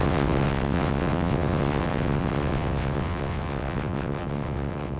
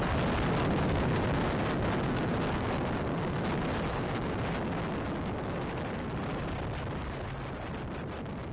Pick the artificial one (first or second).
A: first